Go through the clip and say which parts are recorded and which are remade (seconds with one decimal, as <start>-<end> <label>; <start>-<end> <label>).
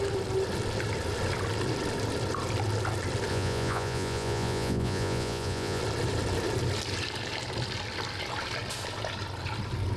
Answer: 0.0-3.3 recorded; 3.3-5.8 remade; 5.8-10.0 recorded